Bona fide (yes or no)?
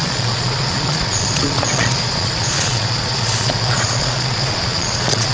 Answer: no